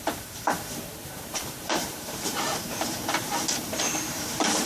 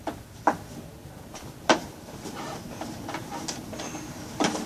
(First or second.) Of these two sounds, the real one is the second